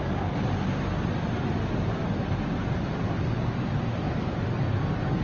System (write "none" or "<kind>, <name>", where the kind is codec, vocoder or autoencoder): none